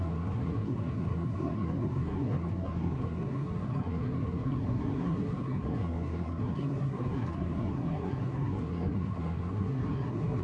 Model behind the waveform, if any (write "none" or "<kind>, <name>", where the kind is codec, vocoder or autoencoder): codec, SNAC